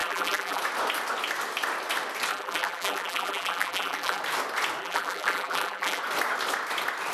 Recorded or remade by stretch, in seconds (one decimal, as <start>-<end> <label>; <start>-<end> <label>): 0.0-0.6 remade; 0.6-2.3 recorded; 2.3-4.2 remade; 4.2-4.8 recorded; 4.8-6.0 remade; 6.0-7.1 recorded